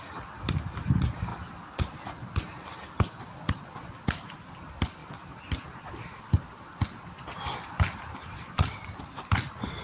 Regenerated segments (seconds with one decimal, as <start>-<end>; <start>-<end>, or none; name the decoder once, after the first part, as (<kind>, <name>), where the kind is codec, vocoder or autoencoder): none